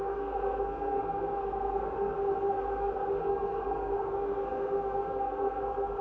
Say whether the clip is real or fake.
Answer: fake